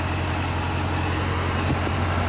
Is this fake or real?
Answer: real